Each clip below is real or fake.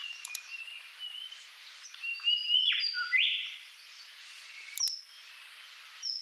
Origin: real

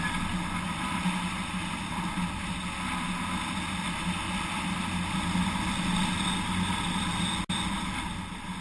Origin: real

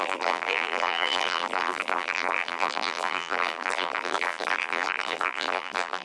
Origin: fake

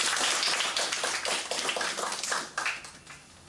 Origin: real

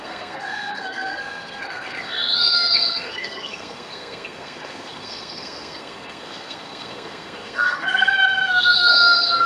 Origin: fake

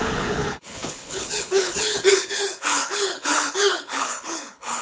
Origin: fake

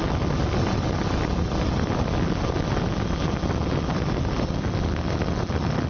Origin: real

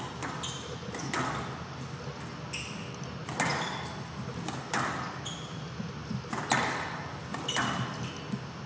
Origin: real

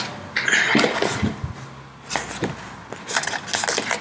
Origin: real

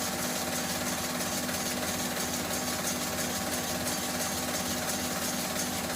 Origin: real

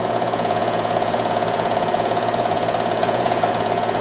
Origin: fake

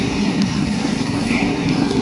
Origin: fake